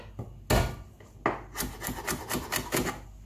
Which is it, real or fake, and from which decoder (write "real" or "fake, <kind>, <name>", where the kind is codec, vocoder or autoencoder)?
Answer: real